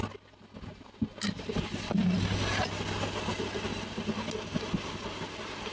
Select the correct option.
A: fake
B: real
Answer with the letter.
B